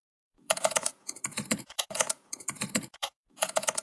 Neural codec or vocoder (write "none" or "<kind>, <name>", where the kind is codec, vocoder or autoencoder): vocoder, Vocos